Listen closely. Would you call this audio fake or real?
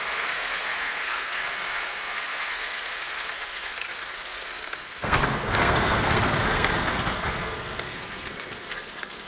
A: fake